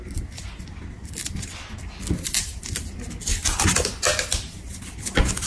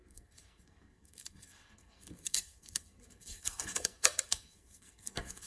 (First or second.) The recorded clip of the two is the first